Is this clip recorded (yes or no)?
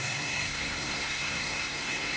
no